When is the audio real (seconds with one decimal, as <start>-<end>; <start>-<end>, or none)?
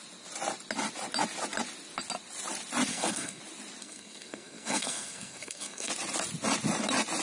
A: 0.0-2.9; 3.4-3.8; 5.9-7.2